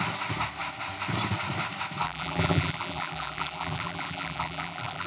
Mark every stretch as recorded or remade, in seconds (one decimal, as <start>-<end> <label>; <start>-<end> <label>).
0.0-2.0 recorded; 2.0-5.1 remade

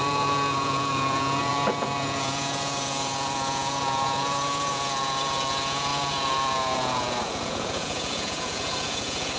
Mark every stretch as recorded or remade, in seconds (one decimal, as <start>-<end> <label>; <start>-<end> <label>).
0.0-9.4 remade

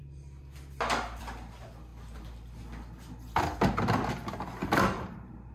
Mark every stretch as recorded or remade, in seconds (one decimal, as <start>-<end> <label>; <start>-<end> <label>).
0.0-4.6 recorded; 4.6-5.5 remade